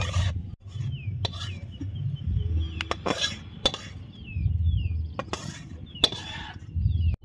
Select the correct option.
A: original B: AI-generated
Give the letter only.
A